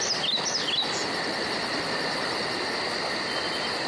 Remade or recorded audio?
recorded